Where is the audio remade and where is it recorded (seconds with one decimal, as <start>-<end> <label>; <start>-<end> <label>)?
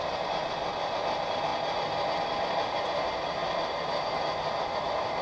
0.0-3.4 recorded; 3.4-4.0 remade; 4.0-5.2 recorded